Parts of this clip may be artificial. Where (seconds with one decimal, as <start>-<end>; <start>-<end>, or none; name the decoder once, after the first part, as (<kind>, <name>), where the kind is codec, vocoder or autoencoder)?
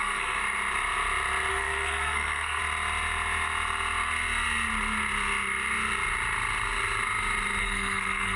0.0-0.4 (codec, SNAC); 1.5-2.6; 7.6-8.4